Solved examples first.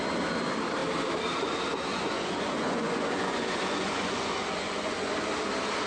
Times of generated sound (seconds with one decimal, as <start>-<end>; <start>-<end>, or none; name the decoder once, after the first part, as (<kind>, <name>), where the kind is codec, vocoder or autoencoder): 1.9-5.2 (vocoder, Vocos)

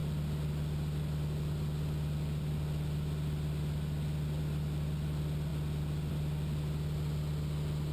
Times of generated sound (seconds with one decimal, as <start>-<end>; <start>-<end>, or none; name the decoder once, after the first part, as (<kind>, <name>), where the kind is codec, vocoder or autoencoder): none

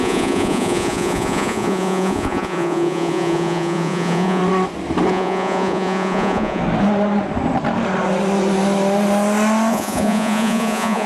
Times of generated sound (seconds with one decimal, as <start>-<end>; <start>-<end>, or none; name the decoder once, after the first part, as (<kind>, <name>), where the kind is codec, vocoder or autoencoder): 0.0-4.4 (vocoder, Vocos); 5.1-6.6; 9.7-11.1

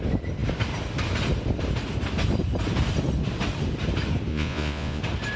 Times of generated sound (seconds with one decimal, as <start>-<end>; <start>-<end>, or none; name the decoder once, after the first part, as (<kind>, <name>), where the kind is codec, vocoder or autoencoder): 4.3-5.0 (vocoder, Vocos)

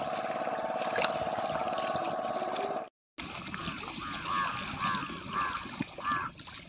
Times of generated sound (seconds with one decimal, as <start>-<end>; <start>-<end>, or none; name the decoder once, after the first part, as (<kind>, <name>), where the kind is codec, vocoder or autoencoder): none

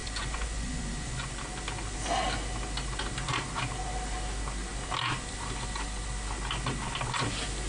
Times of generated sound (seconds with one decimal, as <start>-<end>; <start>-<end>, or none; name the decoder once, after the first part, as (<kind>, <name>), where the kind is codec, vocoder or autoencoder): 0.0-1.3 (vocoder, Vocos)

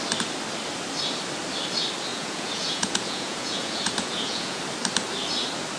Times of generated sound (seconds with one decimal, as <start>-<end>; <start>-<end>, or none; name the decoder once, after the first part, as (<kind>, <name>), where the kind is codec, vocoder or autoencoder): 2.1-4.6 (vocoder, Vocos)

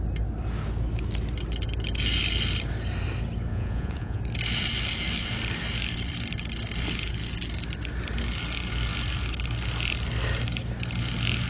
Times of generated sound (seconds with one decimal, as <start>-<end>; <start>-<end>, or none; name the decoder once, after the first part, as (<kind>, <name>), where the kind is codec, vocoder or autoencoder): 3.5-4.2 (vocoder, Vocos)